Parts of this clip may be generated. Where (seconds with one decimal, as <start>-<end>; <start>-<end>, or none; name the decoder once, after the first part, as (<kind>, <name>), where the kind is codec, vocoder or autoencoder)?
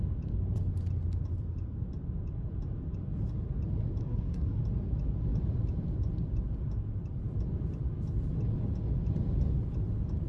4.0-4.6 (codec, SNAC)